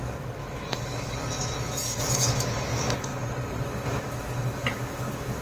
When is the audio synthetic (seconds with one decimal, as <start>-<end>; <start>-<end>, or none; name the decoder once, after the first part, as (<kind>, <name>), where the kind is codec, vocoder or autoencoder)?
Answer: 0.0-3.1 (autoencoder, DAC-VAE); 3.6-5.4